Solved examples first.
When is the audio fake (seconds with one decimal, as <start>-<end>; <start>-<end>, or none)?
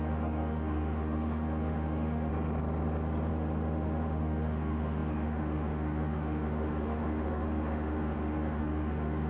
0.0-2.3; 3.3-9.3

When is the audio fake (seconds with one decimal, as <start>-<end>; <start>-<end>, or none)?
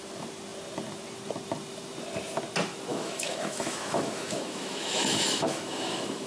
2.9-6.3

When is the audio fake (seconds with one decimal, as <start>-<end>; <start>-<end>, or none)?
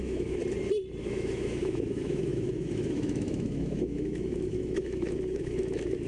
0.0-0.4; 1.0-6.1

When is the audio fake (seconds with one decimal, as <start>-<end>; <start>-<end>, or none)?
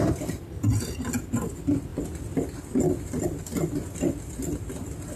none